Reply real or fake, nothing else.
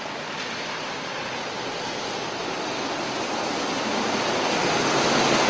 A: fake